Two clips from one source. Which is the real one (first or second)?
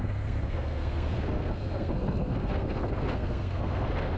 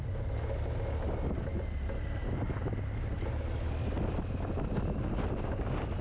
second